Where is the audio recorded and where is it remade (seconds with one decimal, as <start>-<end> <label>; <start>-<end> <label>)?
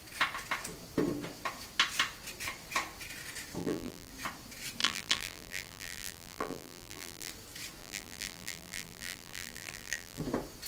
0.0-3.6 recorded; 3.6-4.1 remade; 4.1-4.8 recorded; 4.8-7.3 remade; 7.3-7.8 recorded; 7.8-10.2 remade; 10.2-10.7 recorded